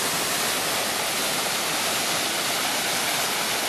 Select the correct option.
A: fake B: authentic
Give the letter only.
B